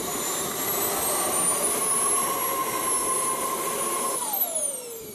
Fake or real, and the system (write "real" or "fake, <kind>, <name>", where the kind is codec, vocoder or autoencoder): real